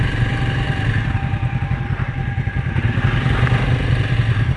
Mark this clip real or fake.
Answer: fake